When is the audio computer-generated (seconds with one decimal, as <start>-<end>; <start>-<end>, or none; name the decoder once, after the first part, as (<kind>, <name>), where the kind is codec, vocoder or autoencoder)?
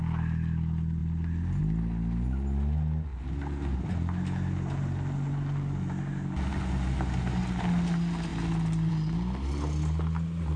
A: none